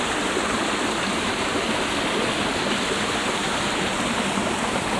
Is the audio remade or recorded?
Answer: recorded